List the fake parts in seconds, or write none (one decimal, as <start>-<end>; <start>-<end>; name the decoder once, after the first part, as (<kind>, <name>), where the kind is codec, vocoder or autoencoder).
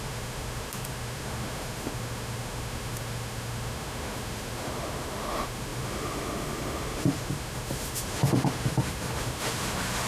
0.0-10.1 (autoencoder, DAC-VAE)